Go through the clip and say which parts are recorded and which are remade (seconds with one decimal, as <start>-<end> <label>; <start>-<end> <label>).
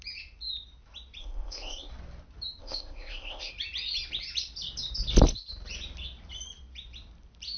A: 0.0-1.2 recorded; 1.2-1.9 remade; 1.9-2.6 recorded; 2.6-3.5 remade; 3.5-7.6 recorded